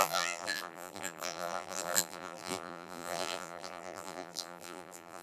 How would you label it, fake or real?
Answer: fake